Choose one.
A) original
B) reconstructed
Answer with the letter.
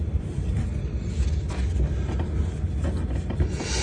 A